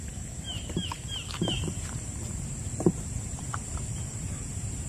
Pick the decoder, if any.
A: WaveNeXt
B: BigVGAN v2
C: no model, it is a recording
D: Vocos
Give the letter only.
B